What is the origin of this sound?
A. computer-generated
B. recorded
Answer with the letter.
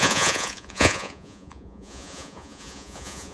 A